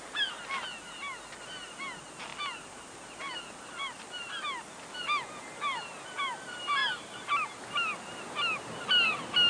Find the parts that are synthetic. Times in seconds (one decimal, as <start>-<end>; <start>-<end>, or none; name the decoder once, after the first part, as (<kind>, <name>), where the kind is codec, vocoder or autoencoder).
none